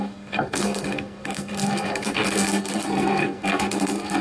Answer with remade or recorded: remade